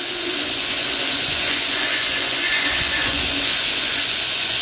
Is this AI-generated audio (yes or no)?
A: yes